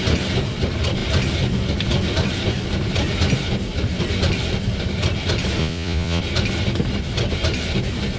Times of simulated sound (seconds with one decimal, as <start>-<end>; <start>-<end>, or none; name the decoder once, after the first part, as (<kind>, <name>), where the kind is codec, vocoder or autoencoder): 5.6-6.2 (vocoder, Vocos)